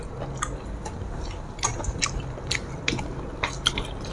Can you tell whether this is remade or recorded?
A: recorded